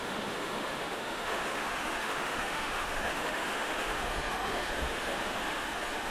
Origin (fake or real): fake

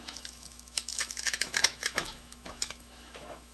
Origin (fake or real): fake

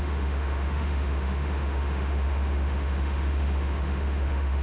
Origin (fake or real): fake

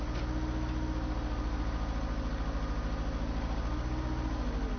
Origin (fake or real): real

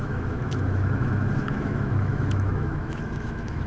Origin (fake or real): fake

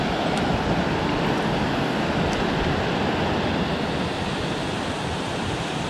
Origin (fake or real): real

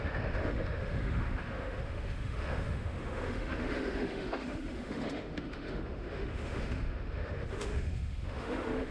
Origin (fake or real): fake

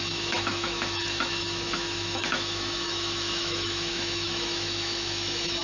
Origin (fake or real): fake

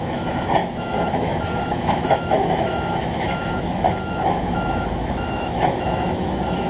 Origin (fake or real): fake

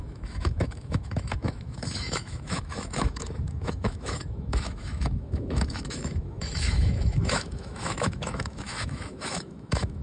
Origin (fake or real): fake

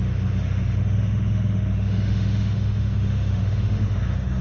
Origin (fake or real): fake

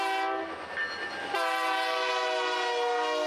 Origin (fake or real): real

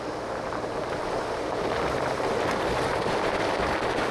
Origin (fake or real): real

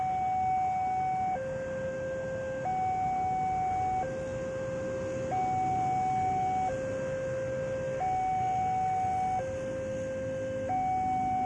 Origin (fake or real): real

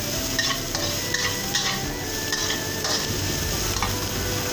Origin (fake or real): real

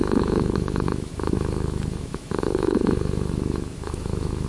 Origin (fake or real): fake